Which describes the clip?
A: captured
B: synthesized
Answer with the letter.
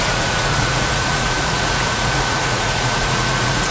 B